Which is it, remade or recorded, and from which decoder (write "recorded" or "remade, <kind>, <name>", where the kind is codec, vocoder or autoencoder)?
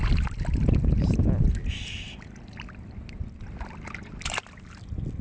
recorded